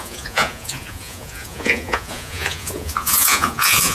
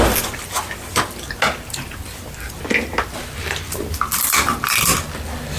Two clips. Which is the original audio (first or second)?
second